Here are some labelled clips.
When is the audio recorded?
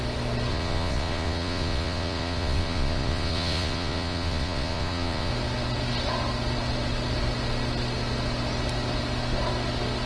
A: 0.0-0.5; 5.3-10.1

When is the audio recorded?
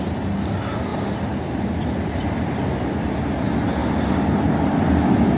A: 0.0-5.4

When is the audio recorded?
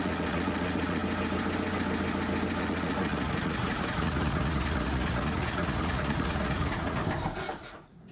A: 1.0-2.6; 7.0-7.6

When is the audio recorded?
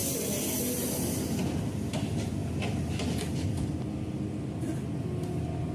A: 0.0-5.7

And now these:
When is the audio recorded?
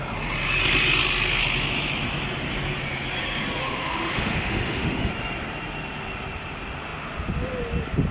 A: 0.0-3.6; 5.1-8.1